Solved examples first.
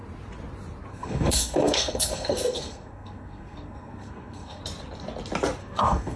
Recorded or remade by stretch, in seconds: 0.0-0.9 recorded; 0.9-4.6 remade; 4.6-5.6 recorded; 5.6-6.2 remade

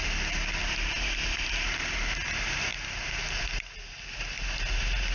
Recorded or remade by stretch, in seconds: 0.0-0.6 recorded; 0.6-1.5 remade; 1.5-5.1 recorded

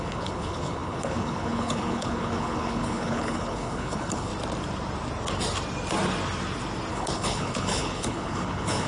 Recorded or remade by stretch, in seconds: 0.0-4.3 remade; 4.3-6.9 recorded; 6.9-8.9 remade

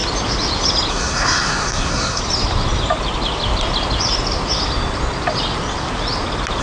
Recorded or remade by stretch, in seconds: 0.0-0.9 recorded; 0.9-2.2 remade; 2.2-6.6 recorded